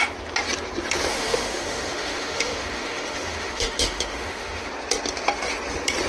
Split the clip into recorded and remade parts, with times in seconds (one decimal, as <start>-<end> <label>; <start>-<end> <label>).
0.0-1.1 recorded; 1.1-4.7 remade; 4.7-6.1 recorded